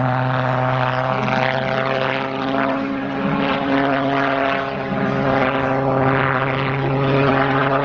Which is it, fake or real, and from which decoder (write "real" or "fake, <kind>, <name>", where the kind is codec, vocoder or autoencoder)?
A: real